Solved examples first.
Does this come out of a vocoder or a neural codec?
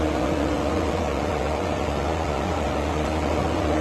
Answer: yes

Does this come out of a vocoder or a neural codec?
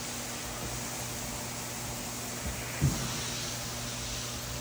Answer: no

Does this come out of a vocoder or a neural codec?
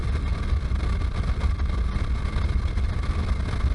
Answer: no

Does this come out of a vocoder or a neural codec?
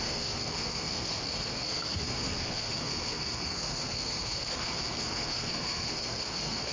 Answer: yes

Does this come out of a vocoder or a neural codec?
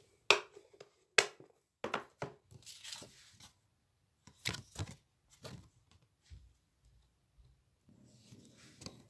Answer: no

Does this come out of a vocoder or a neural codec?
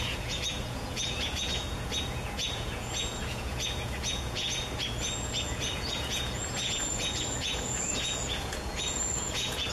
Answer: yes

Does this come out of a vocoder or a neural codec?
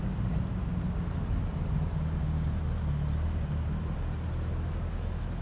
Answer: no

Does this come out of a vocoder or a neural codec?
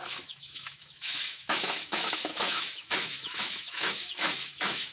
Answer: yes